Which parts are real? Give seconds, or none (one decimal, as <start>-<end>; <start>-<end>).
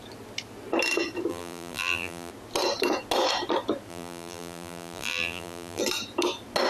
0.0-1.3; 2.3-3.9; 5.8-6.7